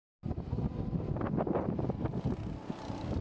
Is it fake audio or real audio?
real